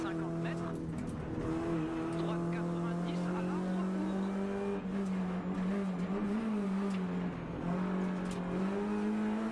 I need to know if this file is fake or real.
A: real